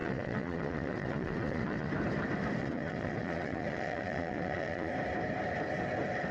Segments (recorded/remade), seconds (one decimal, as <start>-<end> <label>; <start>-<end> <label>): 0.0-1.9 remade; 1.9-2.6 recorded; 2.6-4.9 remade; 4.9-6.3 recorded

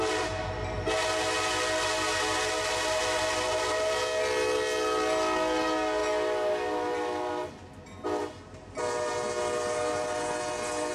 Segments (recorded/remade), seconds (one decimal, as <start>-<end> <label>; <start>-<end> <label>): 0.0-10.9 recorded

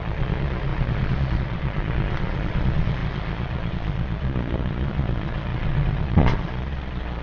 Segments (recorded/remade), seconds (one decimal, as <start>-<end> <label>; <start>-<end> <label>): 0.0-7.2 remade

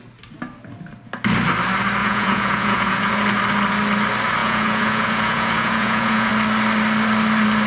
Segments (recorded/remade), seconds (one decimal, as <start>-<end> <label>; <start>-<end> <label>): 0.0-2.0 recorded; 2.0-3.1 remade; 3.1-4.4 recorded; 4.4-6.3 remade; 6.3-7.7 recorded

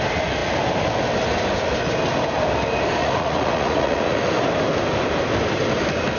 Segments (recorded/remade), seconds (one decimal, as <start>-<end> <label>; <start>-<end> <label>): 0.0-3.0 recorded; 3.0-4.2 remade; 4.2-6.2 recorded